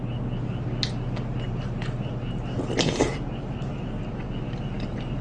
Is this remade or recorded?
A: recorded